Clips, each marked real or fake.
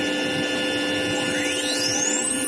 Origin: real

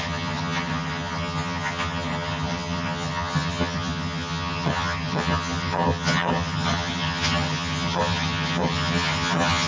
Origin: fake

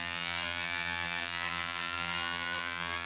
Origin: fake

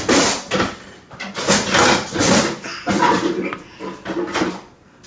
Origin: real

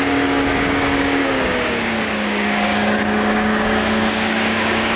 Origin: fake